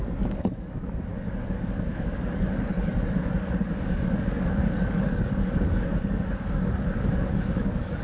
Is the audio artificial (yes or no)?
yes